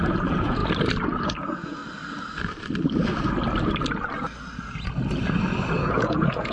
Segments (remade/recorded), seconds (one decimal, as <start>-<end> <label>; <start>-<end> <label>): 0.0-0.6 remade; 0.6-1.2 recorded; 1.2-1.8 remade; 1.8-5.7 recorded; 5.7-6.5 remade